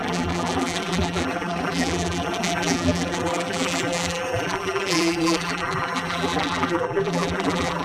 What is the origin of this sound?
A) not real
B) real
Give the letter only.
A